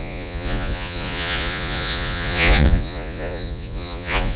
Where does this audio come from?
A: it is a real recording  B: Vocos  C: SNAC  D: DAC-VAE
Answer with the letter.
B